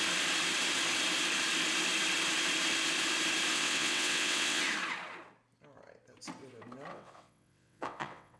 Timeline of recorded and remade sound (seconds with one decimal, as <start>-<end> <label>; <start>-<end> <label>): 0.0-3.5 recorded; 3.5-4.6 remade; 4.6-6.9 recorded; 6.9-8.4 remade